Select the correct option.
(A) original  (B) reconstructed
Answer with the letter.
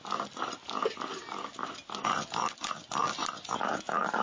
A